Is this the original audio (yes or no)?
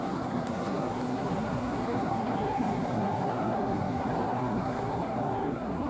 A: no